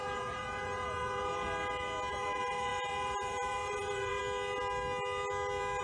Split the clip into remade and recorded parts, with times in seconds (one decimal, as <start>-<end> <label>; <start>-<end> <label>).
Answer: 0.0-1.3 remade; 1.3-2.1 recorded; 2.1-4.2 remade; 4.2-5.8 recorded